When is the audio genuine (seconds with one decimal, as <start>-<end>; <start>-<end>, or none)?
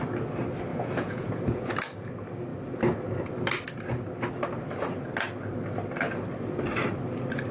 0.0-0.7; 1.7-7.5